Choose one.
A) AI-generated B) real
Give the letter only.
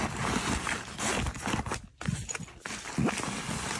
B